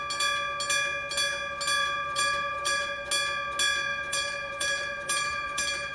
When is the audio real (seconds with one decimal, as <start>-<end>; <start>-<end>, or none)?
0.0-1.8; 3.1-3.9